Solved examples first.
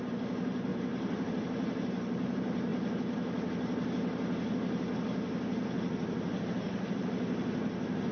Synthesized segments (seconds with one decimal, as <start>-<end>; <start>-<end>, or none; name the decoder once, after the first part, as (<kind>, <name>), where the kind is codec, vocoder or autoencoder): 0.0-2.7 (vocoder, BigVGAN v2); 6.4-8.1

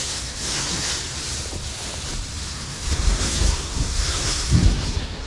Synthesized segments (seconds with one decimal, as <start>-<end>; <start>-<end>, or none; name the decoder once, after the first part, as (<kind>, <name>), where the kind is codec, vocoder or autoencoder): 0.0-0.9 (codec, SNAC); 2.5-5.3

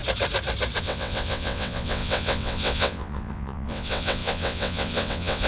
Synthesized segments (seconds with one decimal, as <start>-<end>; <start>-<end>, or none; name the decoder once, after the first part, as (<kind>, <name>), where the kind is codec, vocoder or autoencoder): 0.8-5.5 (vocoder, WaveNeXt)

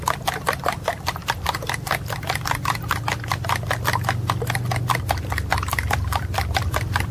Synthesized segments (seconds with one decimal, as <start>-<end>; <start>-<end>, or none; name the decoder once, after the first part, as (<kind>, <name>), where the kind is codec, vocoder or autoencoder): none